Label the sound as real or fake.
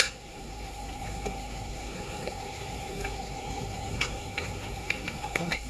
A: fake